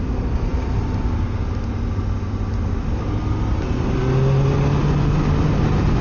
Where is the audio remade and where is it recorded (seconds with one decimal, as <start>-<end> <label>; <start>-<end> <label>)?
0.0-6.0 recorded